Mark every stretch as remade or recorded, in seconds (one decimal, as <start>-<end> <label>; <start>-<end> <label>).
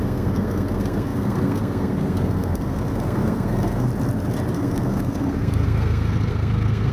0.0-3.9 remade; 3.9-4.5 recorded; 4.5-6.9 remade